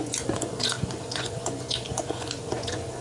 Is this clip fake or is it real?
fake